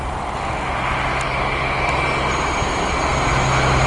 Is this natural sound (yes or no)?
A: yes